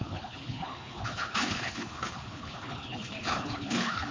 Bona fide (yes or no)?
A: no